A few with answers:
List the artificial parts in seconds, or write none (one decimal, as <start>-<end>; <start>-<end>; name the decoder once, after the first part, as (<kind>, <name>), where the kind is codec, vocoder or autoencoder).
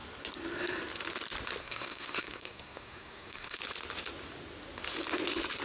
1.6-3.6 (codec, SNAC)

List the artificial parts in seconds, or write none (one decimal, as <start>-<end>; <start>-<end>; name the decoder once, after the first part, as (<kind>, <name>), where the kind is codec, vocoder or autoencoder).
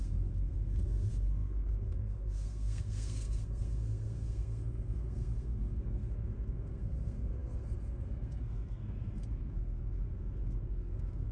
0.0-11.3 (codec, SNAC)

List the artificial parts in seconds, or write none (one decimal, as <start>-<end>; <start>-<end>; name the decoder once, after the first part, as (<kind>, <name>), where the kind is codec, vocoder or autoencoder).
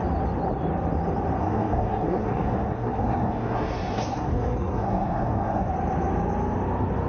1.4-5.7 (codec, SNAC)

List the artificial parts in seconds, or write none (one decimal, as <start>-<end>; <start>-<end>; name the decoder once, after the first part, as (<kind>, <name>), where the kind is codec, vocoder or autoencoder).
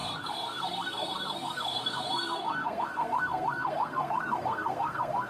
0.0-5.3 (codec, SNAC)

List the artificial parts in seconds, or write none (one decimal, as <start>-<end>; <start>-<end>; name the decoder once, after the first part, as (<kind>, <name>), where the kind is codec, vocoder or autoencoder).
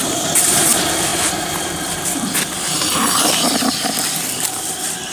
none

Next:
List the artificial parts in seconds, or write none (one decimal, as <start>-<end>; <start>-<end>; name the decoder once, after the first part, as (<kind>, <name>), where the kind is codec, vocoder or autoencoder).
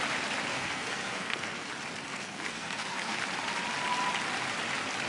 0.5-1.7 (codec, SNAC); 2.1-3.2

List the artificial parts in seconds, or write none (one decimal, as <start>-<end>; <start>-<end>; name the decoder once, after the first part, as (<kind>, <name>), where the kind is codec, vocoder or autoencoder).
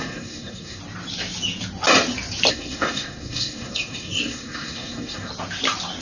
0.0-0.8 (codec, SNAC); 2.5-5.3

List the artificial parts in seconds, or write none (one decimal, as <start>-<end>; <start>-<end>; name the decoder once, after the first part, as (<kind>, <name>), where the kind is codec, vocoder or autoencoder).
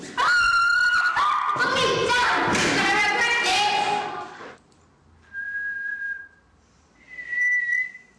none